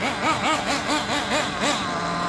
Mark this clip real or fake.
real